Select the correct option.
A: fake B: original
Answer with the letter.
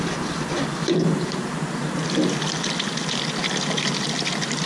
B